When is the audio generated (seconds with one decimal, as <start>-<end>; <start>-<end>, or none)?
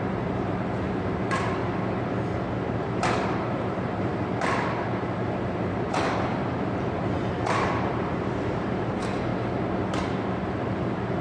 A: 0.0-1.6; 3.6-4.3; 5.4-6.4; 7.5-9.3; 10.0-11.2